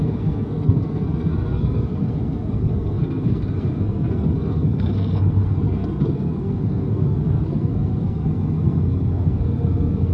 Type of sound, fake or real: fake